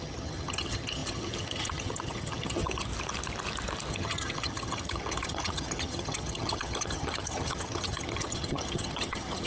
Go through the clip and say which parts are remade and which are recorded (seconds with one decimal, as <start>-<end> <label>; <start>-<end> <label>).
0.0-2.9 remade; 2.9-3.9 recorded; 3.9-9.5 remade